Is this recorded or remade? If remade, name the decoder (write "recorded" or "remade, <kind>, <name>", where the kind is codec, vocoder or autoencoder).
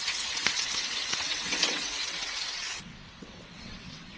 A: remade, vocoder, WaveNeXt